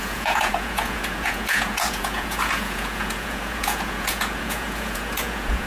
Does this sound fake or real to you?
fake